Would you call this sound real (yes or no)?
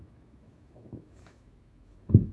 no